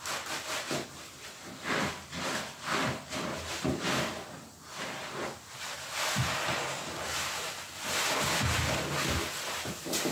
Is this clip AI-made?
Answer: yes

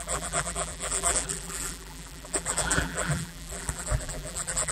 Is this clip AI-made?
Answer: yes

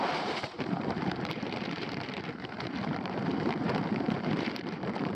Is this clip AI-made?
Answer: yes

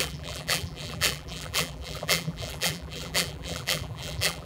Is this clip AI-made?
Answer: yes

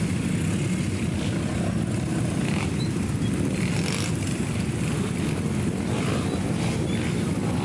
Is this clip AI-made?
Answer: no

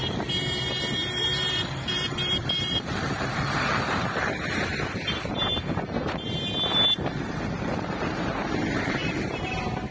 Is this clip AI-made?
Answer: yes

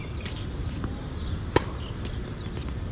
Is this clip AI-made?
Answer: no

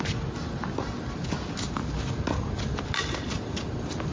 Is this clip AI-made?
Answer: no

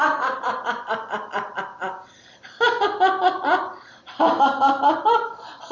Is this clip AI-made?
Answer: no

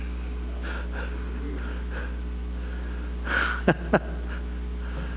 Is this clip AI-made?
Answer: no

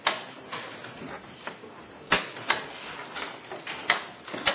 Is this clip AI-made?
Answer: no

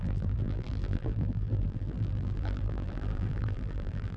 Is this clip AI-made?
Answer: yes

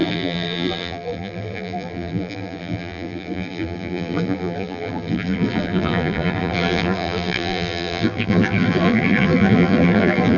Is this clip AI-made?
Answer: yes